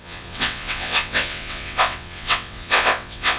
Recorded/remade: remade